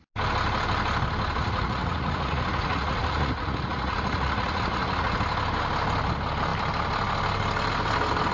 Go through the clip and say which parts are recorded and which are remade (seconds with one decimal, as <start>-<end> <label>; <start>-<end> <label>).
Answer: 0.0-1.4 recorded; 1.4-5.1 remade; 5.1-8.3 recorded

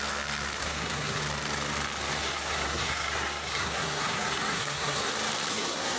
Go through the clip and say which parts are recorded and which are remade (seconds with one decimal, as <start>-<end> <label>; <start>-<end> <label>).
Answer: 0.0-0.6 recorded; 0.6-1.2 remade; 1.2-2.2 recorded; 2.2-5.1 remade; 5.1-5.5 recorded; 5.5-6.0 remade

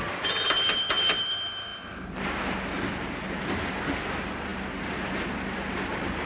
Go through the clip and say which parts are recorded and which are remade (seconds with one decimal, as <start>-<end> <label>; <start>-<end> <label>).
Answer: 0.0-6.3 recorded

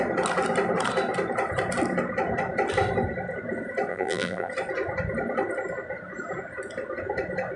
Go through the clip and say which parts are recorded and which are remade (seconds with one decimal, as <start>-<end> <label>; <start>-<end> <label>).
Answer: 0.0-3.9 recorded; 3.9-4.5 remade; 4.5-7.6 recorded

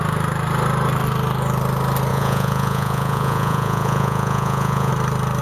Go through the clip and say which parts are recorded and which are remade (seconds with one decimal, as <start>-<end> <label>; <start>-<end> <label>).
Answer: 0.0-2.1 recorded; 2.1-4.9 remade; 4.9-5.4 recorded